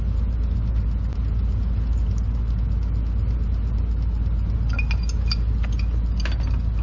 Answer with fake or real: real